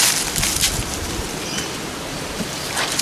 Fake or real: real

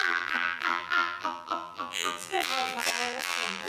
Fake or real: fake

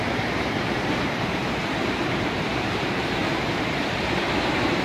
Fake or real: fake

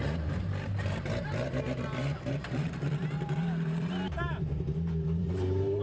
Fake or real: fake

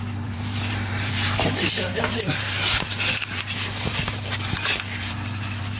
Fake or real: fake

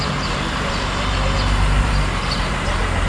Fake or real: fake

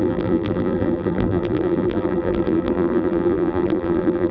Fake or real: fake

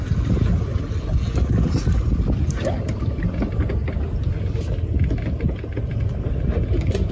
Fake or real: real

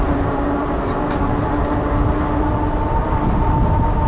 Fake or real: real